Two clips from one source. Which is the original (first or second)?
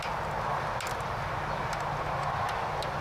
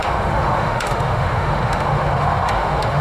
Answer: first